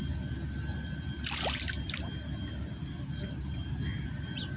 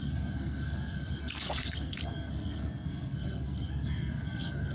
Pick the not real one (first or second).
second